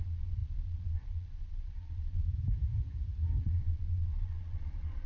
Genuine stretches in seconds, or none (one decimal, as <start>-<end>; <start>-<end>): 2.3-3.4